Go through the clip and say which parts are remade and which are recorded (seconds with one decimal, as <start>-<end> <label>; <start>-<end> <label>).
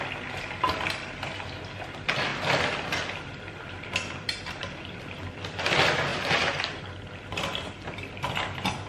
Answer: 0.0-6.1 recorded; 6.1-6.8 remade; 6.8-8.9 recorded